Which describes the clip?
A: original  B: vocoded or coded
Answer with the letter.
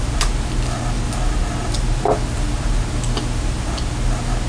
A